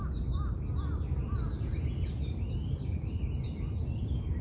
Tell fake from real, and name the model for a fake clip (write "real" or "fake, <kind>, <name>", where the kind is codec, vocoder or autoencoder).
real